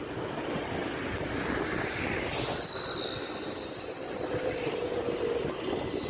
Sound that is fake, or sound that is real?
real